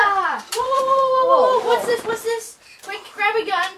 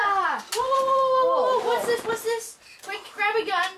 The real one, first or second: second